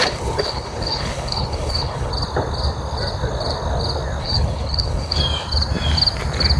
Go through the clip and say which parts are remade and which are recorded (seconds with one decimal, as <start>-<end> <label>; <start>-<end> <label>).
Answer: 0.0-2.1 remade; 2.1-4.2 recorded; 4.2-5.2 remade; 5.2-6.6 recorded